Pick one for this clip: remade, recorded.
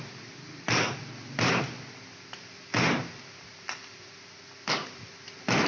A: recorded